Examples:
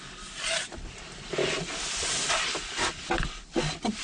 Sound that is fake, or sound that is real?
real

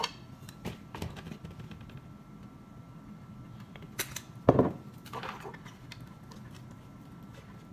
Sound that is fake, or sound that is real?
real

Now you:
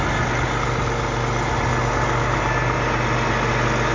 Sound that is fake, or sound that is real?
real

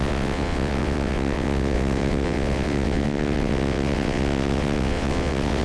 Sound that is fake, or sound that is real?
fake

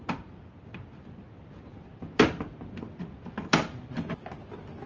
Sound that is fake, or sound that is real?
real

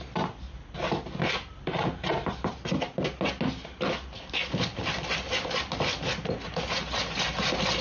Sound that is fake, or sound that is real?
real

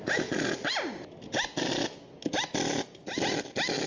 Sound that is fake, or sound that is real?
real